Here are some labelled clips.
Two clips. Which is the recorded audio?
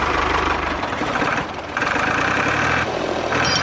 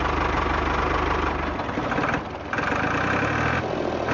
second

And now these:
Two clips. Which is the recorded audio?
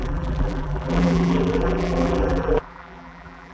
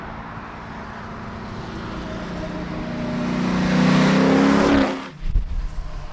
second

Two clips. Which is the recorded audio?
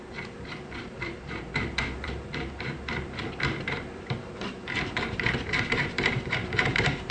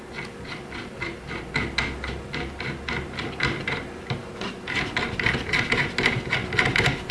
second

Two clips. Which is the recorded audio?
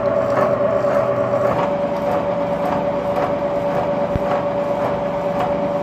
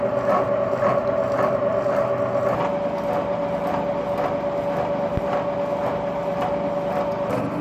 first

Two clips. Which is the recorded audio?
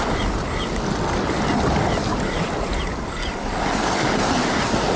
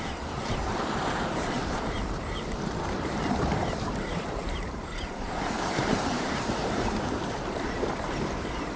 first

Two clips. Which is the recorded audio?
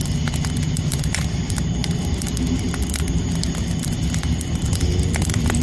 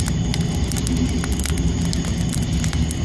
second